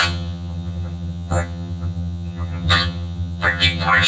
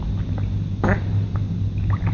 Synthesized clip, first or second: first